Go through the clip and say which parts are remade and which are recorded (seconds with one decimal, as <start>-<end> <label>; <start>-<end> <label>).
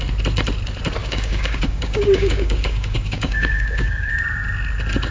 0.0-1.0 recorded; 1.0-4.1 remade; 4.1-5.1 recorded